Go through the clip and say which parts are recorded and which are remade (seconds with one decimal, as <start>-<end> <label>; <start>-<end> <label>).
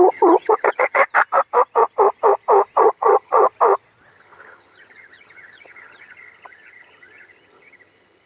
0.0-1.0 remade; 1.0-2.8 recorded; 2.8-3.5 remade; 3.5-4.1 recorded; 4.1-8.3 remade